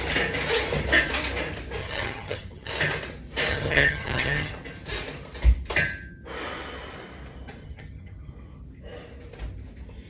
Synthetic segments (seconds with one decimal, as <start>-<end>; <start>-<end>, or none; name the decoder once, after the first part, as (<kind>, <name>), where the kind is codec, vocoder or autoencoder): 1.8-2.7 (vocoder, HiFi-GAN); 3.5-4.5; 7.6-8.3